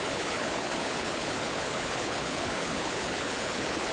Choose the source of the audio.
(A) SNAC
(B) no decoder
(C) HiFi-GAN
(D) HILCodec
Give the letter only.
D